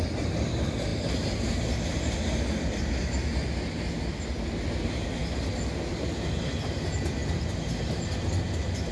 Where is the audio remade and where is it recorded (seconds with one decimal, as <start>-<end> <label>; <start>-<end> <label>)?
0.0-8.9 recorded